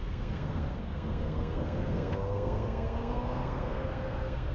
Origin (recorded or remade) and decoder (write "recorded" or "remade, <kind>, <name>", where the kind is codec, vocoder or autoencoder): remade, codec, SNAC